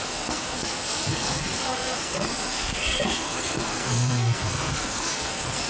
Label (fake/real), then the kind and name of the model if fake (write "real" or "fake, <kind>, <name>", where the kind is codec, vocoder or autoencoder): fake, codec, SNAC